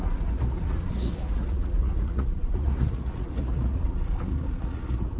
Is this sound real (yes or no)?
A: no